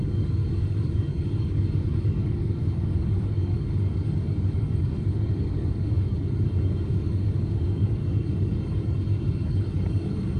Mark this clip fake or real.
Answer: fake